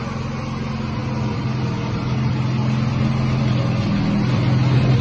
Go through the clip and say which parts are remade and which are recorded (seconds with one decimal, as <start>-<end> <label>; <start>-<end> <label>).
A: 0.0-5.0 recorded